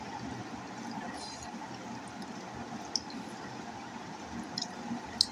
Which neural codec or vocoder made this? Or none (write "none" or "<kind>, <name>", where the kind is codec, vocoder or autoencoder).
none